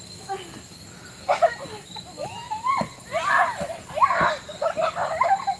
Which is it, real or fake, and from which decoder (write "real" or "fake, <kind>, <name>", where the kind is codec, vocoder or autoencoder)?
real